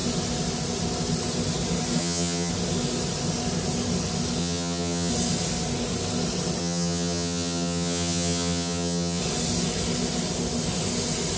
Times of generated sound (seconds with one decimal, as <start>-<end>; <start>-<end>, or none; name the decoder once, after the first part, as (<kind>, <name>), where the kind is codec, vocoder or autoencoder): 2.0-2.5 (vocoder, HiFi-GAN); 4.4-5.1; 6.6-9.2